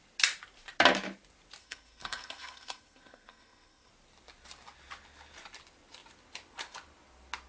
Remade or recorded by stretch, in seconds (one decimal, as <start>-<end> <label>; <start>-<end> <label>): 0.0-1.6 recorded; 1.6-3.9 remade; 3.9-7.5 recorded